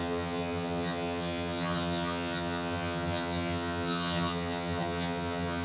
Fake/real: fake